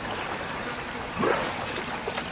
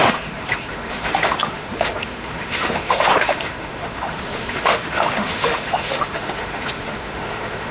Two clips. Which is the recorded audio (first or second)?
first